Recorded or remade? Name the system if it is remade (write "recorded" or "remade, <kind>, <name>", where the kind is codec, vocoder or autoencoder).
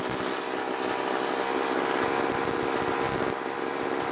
recorded